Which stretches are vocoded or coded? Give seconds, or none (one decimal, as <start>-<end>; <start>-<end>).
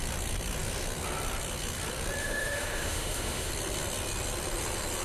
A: 2.2-3.5